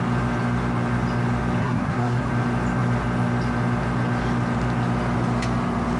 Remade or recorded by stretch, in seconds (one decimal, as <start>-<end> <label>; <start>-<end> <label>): 0.0-1.6 recorded; 1.6-2.3 remade; 2.3-6.0 recorded